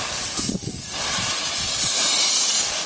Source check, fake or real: fake